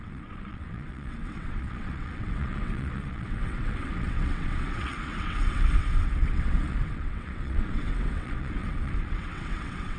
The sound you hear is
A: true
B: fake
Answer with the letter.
B